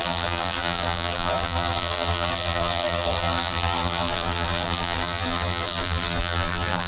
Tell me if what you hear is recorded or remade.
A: remade